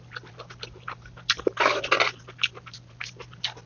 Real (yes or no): yes